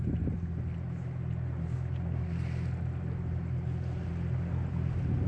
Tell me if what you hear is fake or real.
real